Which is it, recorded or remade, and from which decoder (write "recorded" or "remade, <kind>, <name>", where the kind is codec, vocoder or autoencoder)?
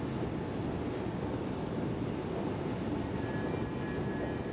recorded